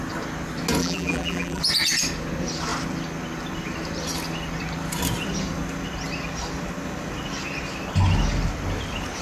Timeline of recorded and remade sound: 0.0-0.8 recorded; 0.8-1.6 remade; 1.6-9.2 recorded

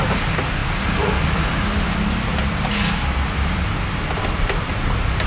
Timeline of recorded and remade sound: 0.0-5.3 recorded

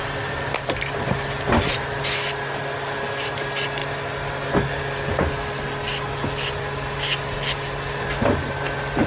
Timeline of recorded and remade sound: 0.0-3.8 remade; 3.8-6.1 recorded; 6.1-9.1 remade

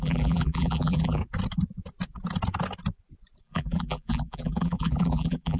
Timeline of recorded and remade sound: 0.0-1.2 remade; 1.2-3.4 recorded; 3.4-5.6 remade